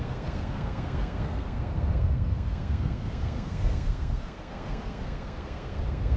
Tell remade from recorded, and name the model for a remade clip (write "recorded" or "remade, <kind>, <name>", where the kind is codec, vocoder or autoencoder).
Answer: remade, codec, SNAC